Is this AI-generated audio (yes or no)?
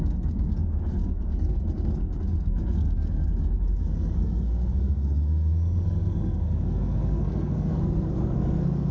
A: yes